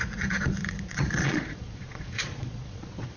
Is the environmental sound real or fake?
fake